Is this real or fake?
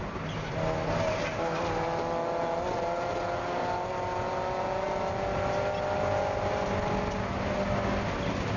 real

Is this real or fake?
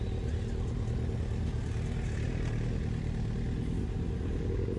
real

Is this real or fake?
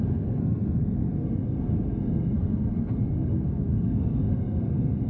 fake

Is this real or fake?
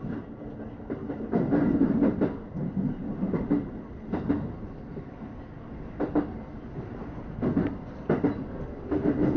real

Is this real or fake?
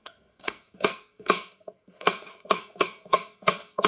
fake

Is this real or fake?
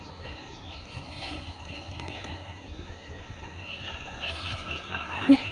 fake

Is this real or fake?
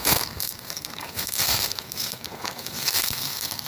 fake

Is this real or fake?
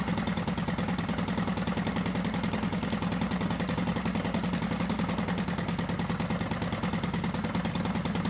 real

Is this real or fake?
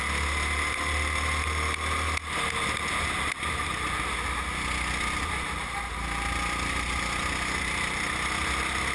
real